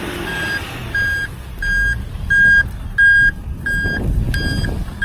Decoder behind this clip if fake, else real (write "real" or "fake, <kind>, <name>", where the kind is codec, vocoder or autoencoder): real